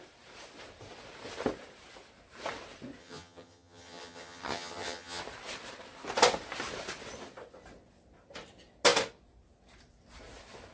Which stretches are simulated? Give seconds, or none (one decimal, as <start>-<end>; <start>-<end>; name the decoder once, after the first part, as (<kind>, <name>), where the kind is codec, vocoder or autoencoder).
3.0-5.2 (vocoder, HiFi-GAN)